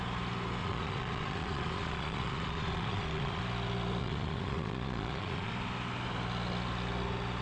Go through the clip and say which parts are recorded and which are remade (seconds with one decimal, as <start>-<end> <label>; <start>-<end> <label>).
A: 0.0-0.6 recorded; 0.6-3.4 remade; 3.4-4.0 recorded; 4.0-5.5 remade; 5.5-7.4 recorded